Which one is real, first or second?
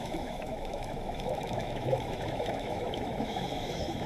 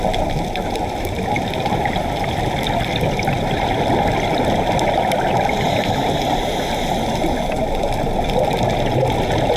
second